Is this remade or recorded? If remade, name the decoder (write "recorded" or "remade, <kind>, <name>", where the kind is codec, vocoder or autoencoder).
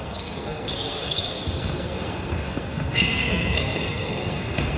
remade, codec, SNAC